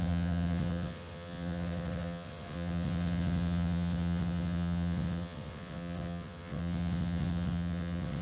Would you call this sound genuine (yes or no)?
no